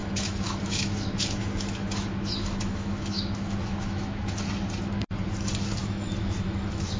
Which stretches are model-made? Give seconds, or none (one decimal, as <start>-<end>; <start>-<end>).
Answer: 0.0-4.2; 5.8-7.0